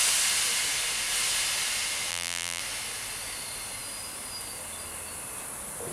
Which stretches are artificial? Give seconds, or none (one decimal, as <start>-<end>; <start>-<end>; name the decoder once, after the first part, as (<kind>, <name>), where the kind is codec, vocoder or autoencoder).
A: 2.1-2.6 (vocoder, BigVGAN v2)